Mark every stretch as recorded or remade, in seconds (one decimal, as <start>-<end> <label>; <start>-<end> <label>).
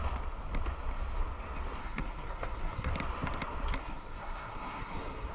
0.0-1.8 recorded; 1.8-2.9 remade; 2.9-3.8 recorded; 3.8-5.3 remade